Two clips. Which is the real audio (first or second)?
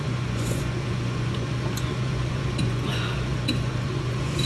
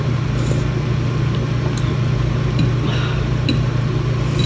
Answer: second